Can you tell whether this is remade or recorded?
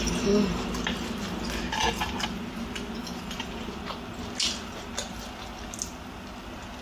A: recorded